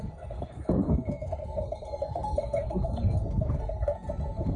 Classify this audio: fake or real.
fake